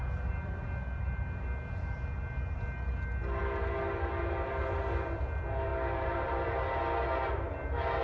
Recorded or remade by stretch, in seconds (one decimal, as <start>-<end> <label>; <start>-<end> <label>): 0.0-8.0 recorded